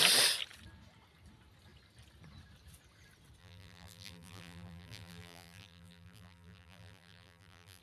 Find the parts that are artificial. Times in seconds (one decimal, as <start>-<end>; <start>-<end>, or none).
3.4-7.8